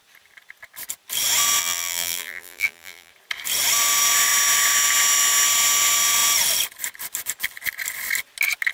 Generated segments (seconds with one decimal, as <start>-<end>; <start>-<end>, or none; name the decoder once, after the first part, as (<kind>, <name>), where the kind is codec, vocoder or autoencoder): 1.6-3.1 (vocoder, BigVGAN v2)